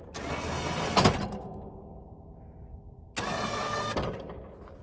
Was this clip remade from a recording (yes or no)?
no